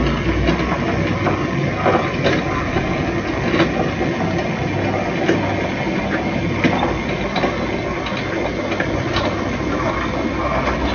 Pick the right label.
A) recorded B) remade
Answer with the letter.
A